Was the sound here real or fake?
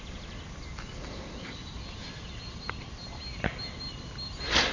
real